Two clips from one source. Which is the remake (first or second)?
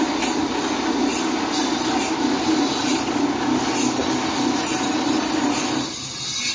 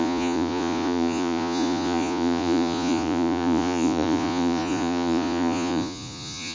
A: second